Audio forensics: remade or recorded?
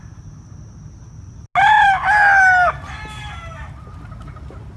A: recorded